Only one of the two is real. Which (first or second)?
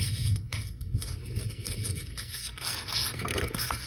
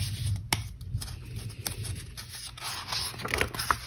second